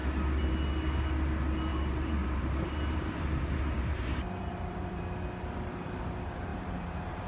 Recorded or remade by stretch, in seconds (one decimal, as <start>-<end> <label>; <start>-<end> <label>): 0.0-1.7 recorded; 1.7-5.0 remade; 5.0-6.5 recorded; 6.5-7.3 remade